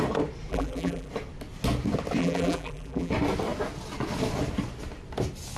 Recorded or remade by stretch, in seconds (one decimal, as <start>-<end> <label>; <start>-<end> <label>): 0.0-0.5 recorded; 0.5-1.1 remade; 1.1-2.2 recorded; 2.2-3.1 remade; 3.1-5.6 recorded